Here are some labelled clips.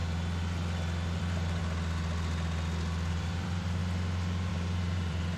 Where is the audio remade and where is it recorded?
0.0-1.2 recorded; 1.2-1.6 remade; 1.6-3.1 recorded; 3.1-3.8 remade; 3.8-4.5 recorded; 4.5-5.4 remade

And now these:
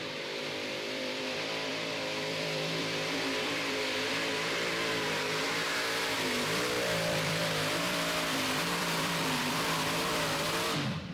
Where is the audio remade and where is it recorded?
0.0-11.1 remade

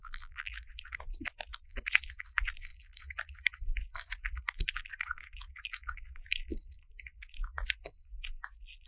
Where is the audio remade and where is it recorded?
0.0-0.5 remade; 0.5-8.9 recorded

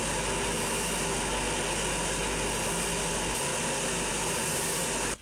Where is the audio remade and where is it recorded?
0.0-3.1 recorded; 3.1-3.5 remade; 3.5-4.1 recorded; 4.1-5.2 remade

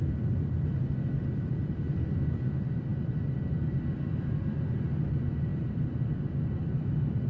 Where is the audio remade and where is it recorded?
0.0-5.5 recorded; 5.5-6.2 remade; 6.2-7.3 recorded

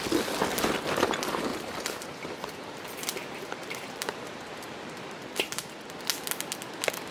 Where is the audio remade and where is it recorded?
0.0-1.5 recorded; 1.5-5.7 remade; 5.7-7.1 recorded

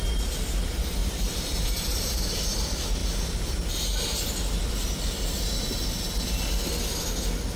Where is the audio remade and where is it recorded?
0.0-1.0 recorded; 1.0-2.2 remade; 2.2-7.6 recorded